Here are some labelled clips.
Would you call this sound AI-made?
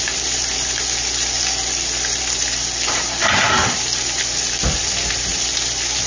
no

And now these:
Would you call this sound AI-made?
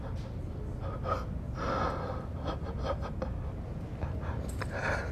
no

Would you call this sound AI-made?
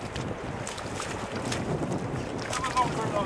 no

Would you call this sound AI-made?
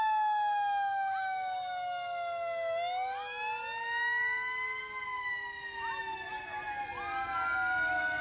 no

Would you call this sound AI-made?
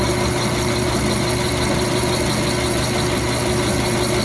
no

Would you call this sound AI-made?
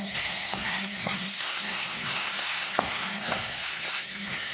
yes